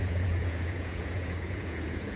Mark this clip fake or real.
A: fake